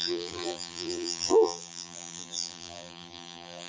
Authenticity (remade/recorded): remade